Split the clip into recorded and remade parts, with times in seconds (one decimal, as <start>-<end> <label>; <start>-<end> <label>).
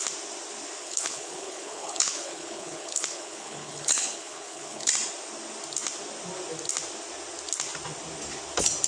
0.0-0.8 recorded; 0.8-4.9 remade; 4.9-8.9 recorded